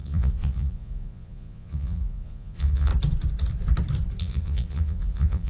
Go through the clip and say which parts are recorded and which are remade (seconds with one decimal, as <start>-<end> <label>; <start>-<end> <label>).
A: 0.0-2.9 remade; 2.9-4.2 recorded; 4.2-5.5 remade